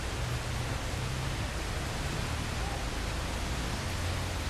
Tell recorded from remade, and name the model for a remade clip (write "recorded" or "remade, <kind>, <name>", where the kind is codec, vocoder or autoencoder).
recorded